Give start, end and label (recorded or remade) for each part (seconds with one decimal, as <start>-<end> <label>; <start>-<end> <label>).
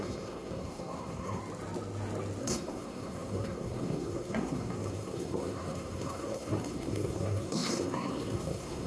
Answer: 0.0-1.4 remade; 1.4-2.4 recorded; 2.4-8.9 remade